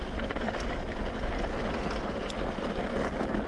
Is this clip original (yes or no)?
yes